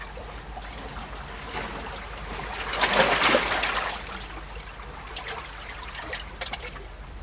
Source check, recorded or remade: recorded